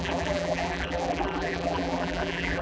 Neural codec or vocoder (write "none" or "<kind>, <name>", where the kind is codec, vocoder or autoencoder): vocoder, BigVGAN v2